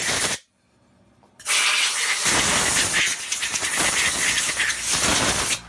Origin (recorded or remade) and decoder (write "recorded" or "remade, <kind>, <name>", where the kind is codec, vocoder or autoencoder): recorded